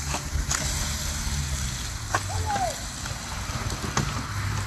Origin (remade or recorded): recorded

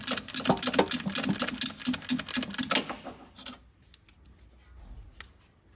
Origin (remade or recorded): recorded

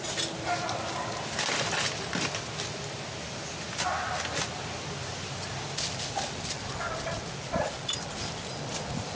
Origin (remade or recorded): recorded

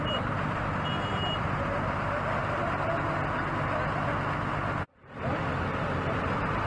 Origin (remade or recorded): recorded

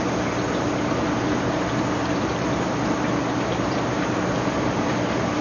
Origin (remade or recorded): recorded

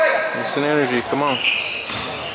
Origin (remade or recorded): recorded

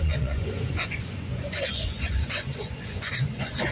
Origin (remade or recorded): remade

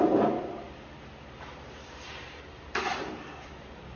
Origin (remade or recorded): remade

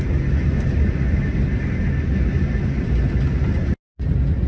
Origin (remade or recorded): recorded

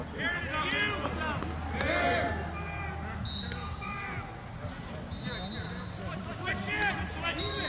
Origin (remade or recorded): recorded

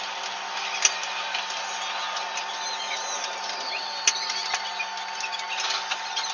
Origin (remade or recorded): recorded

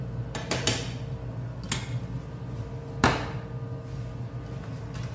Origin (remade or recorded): recorded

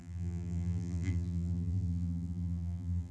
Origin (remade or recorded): remade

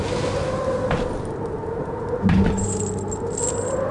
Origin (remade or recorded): recorded